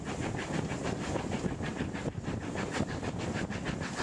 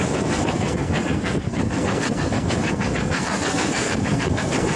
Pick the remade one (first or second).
second